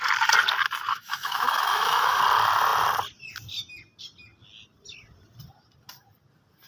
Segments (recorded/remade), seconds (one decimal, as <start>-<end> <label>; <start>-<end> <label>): 0.0-0.9 recorded; 0.9-2.2 remade; 2.2-6.7 recorded